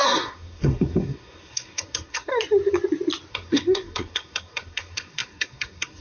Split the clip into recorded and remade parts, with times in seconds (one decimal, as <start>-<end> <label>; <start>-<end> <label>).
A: 0.0-2.3 remade; 2.3-3.3 recorded; 3.3-6.0 remade